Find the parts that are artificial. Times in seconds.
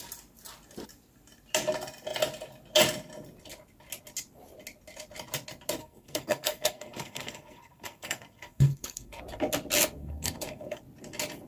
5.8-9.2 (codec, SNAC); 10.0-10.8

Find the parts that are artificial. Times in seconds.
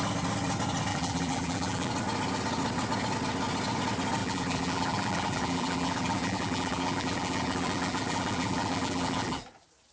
0.9-1.9 (vocoder, BigVGAN v2); 4.2-9.4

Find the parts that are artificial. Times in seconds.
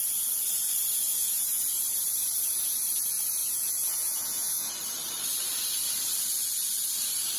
1.1-1.6 (vocoder, Vocos); 3.4-4.7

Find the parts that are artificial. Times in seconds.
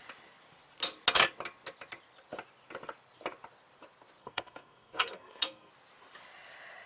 4.2-5.7 (codec, SNAC)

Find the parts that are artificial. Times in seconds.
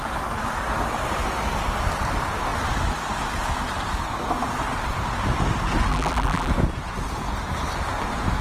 5.9-6.5 (vocoder, BigVGAN v2)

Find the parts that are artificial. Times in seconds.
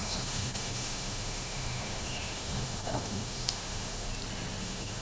0.0-4.1 (autoencoder, DAC-VAE); 4.6-5.0